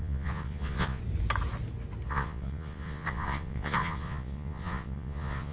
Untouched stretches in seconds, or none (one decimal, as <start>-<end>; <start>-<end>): 1.0-2.1